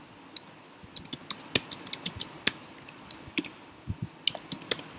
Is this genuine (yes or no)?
yes